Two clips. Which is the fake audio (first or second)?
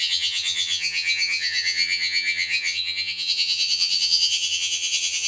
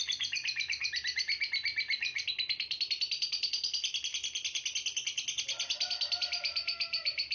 first